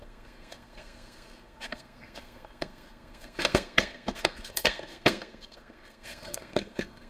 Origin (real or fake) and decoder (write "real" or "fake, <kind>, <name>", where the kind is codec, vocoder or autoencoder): fake, codec, SNAC